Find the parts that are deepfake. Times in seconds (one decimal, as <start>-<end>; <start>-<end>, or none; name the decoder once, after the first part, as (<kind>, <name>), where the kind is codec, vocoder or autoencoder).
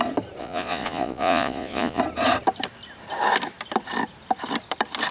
0.4-2.0 (vocoder, Vocos)